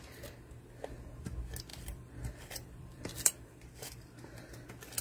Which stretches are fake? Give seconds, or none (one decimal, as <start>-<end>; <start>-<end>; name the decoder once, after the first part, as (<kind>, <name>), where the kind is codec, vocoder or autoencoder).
1.7-3.9 (vocoder, BigVGAN v2)